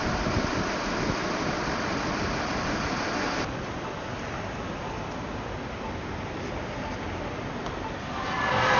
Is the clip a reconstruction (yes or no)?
no